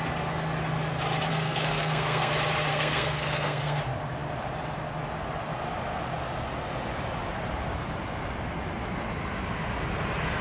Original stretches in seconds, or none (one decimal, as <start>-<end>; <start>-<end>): 0.0-1.3; 2.3-2.7; 3.8-10.4